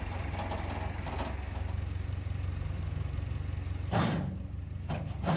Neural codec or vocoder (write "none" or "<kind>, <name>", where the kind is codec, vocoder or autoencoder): none